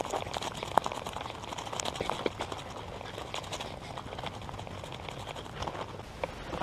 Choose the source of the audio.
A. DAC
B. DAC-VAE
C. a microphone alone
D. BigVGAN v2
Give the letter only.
C